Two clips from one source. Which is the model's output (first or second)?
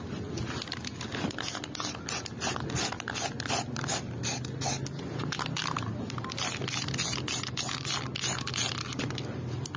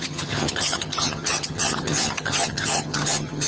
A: second